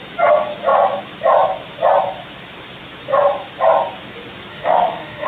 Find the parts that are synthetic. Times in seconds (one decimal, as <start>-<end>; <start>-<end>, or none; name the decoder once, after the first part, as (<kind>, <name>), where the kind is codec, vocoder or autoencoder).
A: 4.5-5.3 (autoencoder, DAC-VAE)